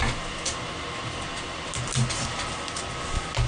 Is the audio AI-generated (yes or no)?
no